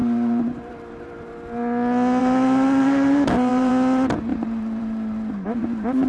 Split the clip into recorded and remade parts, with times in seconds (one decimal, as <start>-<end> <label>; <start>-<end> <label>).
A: 0.0-1.3 remade; 1.3-2.2 recorded; 2.2-3.7 remade; 3.7-4.3 recorded; 4.3-5.6 remade; 5.6-6.1 recorded